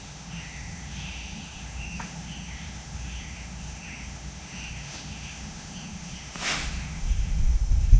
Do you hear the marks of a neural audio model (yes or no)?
yes